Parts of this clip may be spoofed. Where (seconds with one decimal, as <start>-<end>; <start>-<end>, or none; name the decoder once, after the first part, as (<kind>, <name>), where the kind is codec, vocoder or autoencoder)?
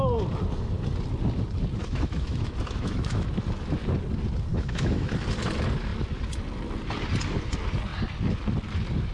1.8-3.3 (autoencoder, DAC-VAE); 4.5-5.1